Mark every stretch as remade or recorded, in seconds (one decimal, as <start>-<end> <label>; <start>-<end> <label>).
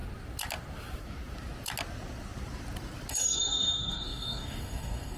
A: 0.0-3.1 recorded; 3.1-5.2 remade